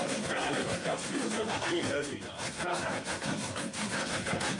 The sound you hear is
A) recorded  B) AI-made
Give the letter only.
B